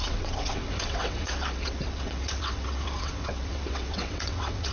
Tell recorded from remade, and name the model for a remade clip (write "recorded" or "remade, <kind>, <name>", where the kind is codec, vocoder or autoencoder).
remade, vocoder, WaveNeXt